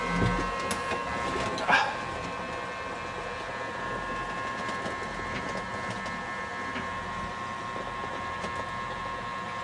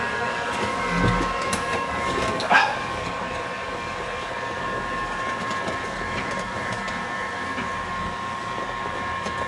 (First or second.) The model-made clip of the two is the second